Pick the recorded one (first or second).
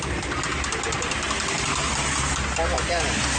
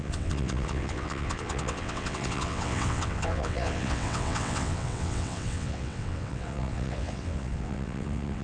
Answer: first